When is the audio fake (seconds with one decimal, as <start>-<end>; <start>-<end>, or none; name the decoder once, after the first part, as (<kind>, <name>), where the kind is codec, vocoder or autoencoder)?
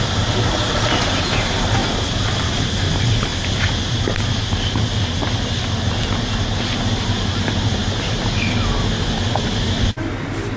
0.0-3.3 (vocoder, BigVGAN v2); 6.8-7.8